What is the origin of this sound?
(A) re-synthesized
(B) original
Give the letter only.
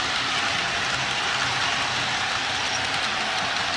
B